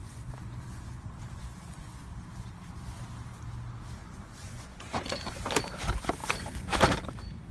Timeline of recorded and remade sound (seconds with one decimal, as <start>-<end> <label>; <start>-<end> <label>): 0.0-2.0 remade; 2.0-4.0 recorded; 4.0-5.3 remade; 5.3-6.2 recorded; 6.2-6.8 remade; 6.8-7.5 recorded